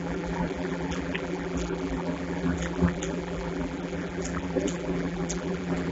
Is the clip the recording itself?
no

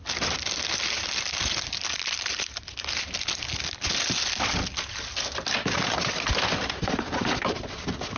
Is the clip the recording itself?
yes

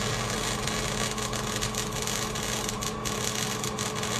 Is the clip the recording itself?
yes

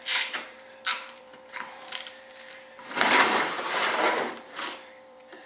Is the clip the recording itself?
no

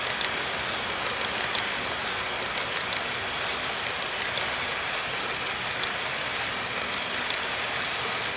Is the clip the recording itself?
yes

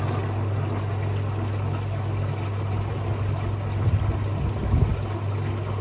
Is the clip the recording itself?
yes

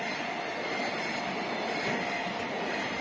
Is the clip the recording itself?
yes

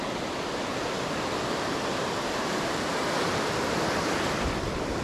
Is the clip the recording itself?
yes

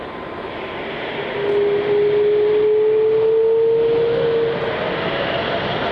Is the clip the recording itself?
yes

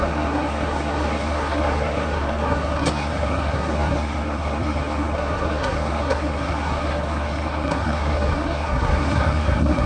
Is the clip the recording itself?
no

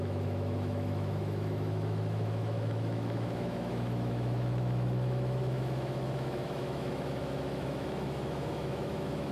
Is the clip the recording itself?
no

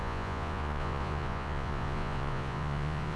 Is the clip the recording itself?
no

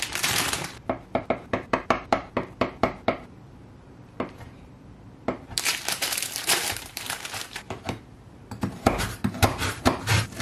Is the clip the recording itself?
no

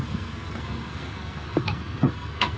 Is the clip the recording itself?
no